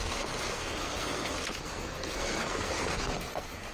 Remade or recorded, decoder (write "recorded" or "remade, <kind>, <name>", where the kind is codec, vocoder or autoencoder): remade, codec, SNAC